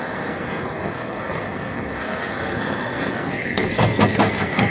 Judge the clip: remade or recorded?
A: remade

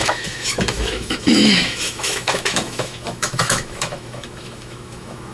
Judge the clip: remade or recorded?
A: remade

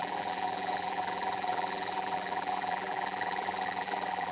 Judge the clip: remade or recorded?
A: remade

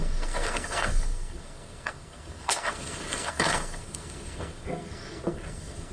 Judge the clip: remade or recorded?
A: remade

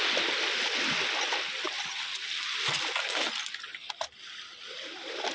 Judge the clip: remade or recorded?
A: recorded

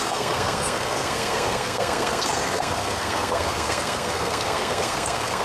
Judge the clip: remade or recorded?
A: remade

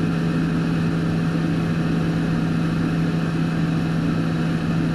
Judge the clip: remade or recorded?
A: recorded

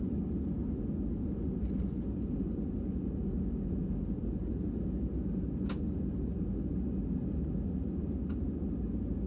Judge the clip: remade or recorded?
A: recorded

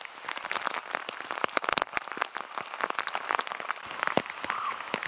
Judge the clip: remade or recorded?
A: recorded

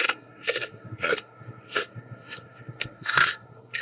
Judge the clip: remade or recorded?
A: remade